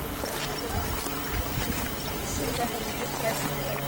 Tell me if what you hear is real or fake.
fake